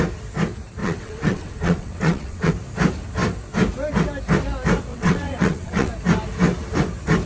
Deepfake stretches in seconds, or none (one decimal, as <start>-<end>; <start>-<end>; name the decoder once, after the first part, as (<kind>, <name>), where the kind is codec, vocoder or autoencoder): 0.8-2.5 (vocoder, WaveNeXt); 4.9-5.9